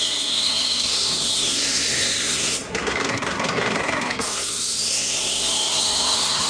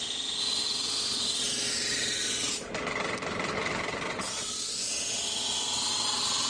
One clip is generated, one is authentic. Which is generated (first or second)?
first